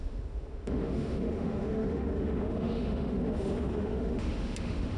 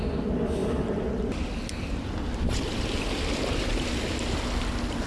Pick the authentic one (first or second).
second